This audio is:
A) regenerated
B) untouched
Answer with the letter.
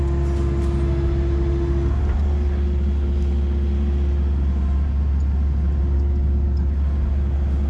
B